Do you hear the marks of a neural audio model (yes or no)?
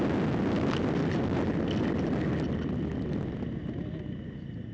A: no